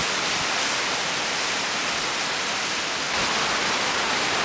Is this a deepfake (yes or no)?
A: no